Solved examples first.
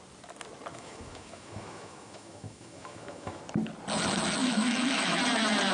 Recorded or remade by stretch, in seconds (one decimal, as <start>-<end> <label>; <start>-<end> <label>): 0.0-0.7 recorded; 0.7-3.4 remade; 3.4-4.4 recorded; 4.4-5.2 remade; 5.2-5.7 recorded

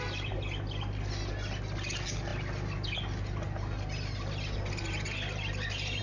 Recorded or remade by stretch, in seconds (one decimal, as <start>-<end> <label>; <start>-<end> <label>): 0.0-6.0 recorded

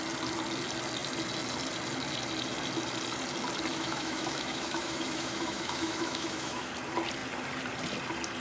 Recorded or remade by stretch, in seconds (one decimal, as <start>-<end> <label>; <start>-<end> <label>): 0.0-3.7 recorded; 3.7-6.7 remade; 6.7-8.4 recorded

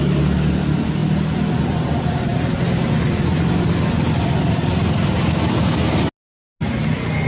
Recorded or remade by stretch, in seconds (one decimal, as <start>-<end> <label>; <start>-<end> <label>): 0.0-7.3 recorded

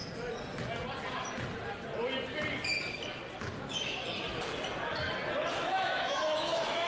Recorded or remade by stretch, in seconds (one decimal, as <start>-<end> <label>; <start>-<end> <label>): 0.0-3.6 recorded; 3.6-4.0 remade; 4.0-5.5 recorded; 5.5-6.9 remade

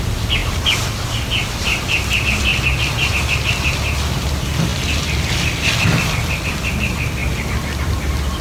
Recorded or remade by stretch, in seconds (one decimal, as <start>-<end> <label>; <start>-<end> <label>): 0.0-8.4 recorded

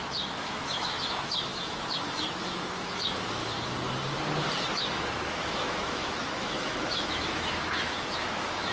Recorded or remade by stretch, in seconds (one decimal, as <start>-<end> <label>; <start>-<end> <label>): 0.0-3.4 remade; 3.4-4.7 recorded; 4.7-8.7 remade

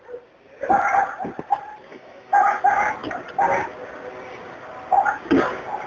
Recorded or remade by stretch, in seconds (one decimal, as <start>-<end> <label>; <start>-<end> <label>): 0.0-1.9 recorded; 1.9-2.6 remade; 2.6-5.9 recorded